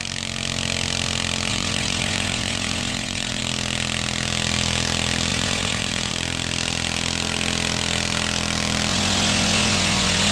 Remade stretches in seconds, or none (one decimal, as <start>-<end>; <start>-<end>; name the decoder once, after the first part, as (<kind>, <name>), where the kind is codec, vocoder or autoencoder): 1.5-3.4 (vocoder, Vocos); 5.3-6.1; 8.9-10.3

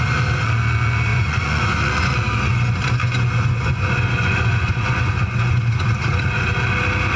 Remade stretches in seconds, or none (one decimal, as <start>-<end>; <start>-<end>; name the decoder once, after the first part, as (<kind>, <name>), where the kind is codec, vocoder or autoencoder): 1.1-2.2 (vocoder, Vocos); 3.0-6.2

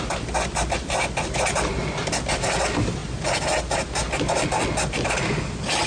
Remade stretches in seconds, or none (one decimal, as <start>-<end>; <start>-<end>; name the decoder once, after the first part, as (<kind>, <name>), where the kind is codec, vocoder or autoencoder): none

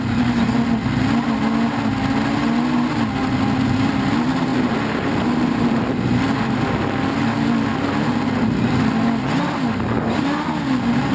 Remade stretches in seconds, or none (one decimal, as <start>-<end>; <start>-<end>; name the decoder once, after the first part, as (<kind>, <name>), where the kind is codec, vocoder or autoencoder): none

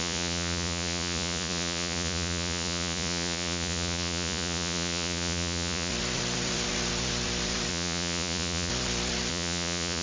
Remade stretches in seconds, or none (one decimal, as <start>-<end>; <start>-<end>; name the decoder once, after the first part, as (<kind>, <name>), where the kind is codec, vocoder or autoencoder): 0.0-5.9 (vocoder, Vocos); 7.7-8.7; 9.3-10.0

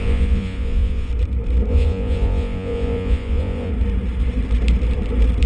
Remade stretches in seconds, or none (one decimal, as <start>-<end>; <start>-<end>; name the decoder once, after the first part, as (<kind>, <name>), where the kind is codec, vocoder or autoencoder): 0.0-1.1 (vocoder, Vocos); 1.7-3.7

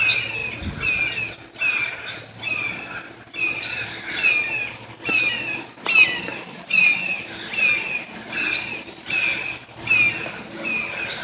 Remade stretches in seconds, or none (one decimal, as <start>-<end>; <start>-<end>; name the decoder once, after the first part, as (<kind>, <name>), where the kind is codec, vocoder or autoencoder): none

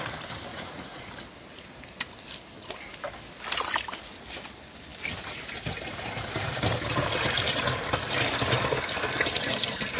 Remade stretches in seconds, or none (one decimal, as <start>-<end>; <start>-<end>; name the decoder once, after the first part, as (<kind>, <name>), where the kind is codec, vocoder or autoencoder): 0.5-1.1 (vocoder, Vocos)